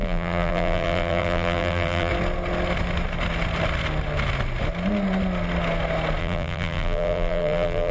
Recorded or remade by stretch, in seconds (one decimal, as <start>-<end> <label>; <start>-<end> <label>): 0.0-2.1 remade; 2.1-6.2 recorded; 6.2-7.9 remade